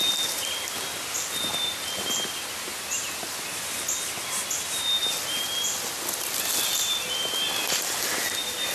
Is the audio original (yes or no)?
yes